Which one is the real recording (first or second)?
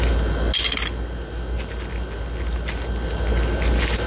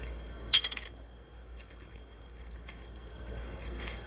first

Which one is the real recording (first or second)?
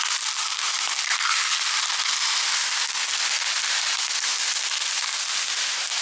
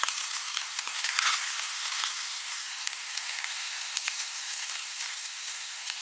first